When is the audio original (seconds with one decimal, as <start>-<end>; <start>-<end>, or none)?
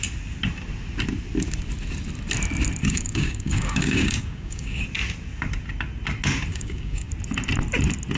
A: 0.0-2.8; 4.8-6.5; 7.1-8.2